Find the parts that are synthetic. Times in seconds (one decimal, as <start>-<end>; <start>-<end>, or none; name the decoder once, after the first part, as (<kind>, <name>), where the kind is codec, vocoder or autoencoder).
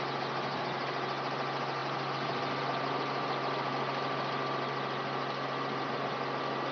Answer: none